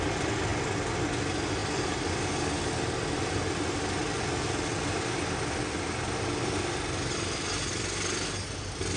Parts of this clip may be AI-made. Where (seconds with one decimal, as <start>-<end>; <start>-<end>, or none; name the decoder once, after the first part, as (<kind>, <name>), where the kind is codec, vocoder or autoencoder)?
none